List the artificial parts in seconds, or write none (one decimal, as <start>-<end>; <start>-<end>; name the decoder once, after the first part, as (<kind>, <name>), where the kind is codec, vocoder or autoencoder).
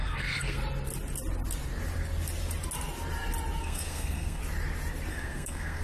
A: 0.0-0.6 (codec, SNAC); 3.6-4.4; 5.1-5.8